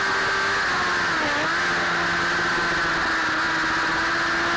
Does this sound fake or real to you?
real